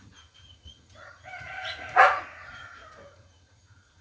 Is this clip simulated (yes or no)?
yes